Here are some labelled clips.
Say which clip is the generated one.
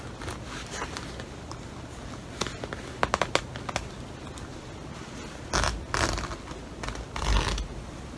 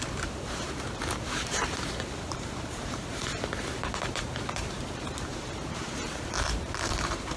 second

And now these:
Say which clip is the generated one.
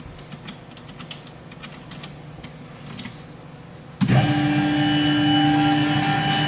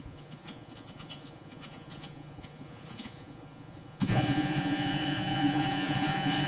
second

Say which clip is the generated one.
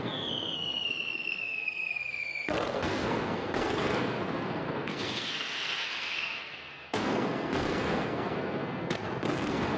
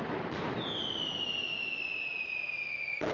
first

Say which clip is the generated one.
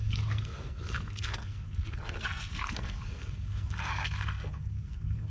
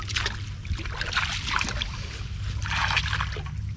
first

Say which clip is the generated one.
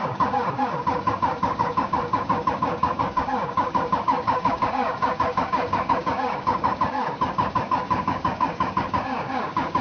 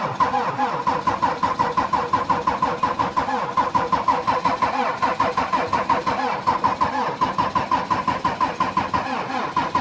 first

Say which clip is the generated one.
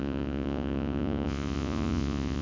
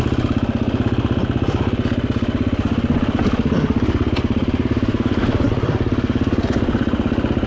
first